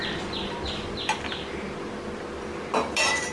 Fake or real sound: real